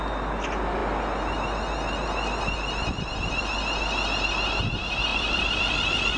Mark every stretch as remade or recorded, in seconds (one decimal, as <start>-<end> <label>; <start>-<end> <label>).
0.0-5.1 recorded; 5.1-6.2 remade